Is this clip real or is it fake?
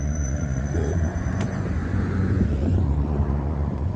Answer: fake